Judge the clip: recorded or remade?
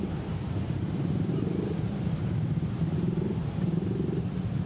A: remade